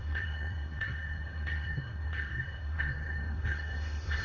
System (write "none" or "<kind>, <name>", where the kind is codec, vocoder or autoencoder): codec, SNAC